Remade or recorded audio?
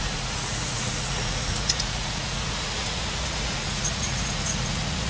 remade